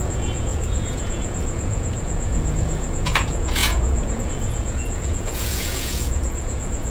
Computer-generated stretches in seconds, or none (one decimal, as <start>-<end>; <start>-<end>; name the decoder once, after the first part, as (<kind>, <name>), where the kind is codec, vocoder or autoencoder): 0.0-6.9 (vocoder, Vocos)